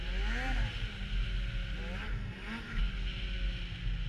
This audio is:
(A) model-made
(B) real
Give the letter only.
B